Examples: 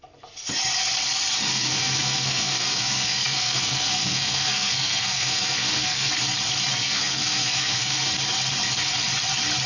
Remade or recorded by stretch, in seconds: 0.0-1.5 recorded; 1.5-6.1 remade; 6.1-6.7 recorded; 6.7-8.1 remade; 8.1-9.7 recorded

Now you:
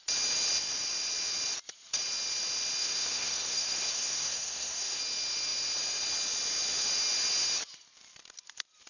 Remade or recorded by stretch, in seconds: 0.0-2.8 recorded; 2.8-5.0 remade; 5.0-8.9 recorded

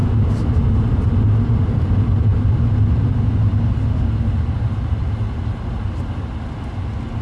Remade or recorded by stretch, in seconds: 0.0-7.2 recorded

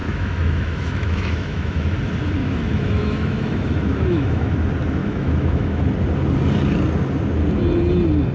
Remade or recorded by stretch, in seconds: 0.0-1.9 remade; 1.9-2.4 recorded; 2.4-4.5 remade; 4.5-5.0 recorded; 5.0-5.8 remade; 5.8-8.3 recorded